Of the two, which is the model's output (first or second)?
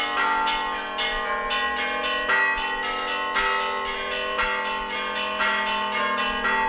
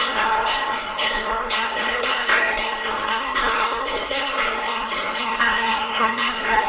second